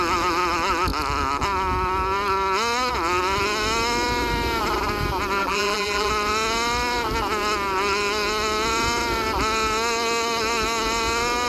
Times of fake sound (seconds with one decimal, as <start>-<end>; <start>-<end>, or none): 5.4-6.1